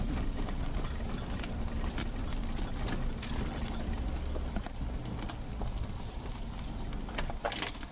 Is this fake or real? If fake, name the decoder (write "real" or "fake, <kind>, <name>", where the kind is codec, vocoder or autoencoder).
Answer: real